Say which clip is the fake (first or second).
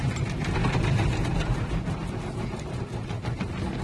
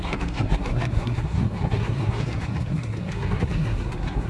second